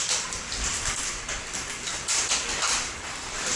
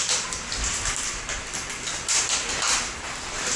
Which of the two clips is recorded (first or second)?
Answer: second